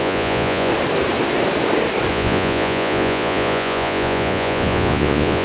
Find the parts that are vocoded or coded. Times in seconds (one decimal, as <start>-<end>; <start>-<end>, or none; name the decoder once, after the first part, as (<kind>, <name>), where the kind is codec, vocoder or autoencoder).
0.0-0.7 (vocoder, Vocos); 2.1-5.4